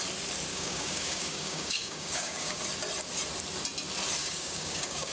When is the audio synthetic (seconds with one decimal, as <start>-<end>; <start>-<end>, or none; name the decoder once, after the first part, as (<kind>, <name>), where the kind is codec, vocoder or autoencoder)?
0.5-2.6 (codec, DAC); 4.2-5.1